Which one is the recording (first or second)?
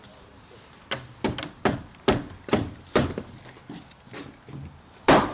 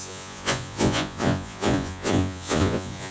first